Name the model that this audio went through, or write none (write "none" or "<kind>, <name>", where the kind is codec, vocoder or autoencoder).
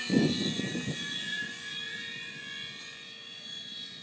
vocoder, Vocos